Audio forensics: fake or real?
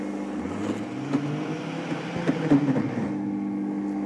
real